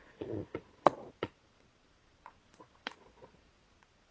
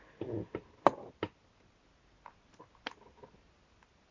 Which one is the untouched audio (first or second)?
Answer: second